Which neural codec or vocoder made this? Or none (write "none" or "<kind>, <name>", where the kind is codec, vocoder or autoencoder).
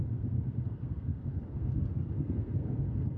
codec, SNAC